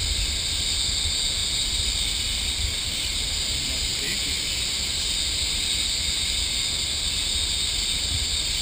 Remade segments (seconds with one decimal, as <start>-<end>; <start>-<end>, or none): none